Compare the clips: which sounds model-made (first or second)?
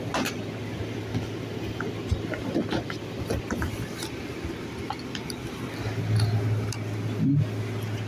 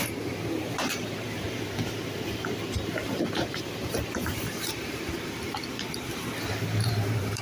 second